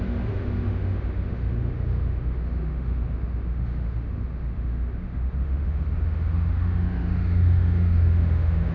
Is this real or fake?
fake